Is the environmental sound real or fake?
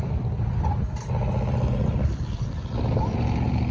real